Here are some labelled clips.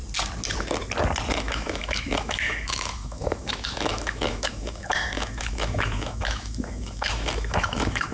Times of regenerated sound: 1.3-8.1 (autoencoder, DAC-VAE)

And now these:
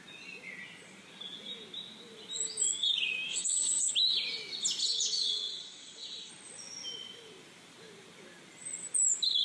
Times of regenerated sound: 3.3-3.9 (vocoder, WaveNeXt); 4.8-6.3

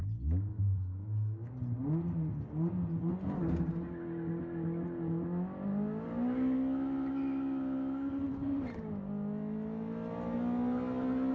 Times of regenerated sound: 0.5-1.5 (autoencoder, DAC-VAE)

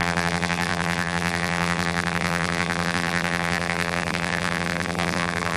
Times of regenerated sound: 0.0-5.6 (vocoder, BigVGAN v2)